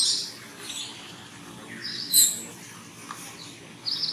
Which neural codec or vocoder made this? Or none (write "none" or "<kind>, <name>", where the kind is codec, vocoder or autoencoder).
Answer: none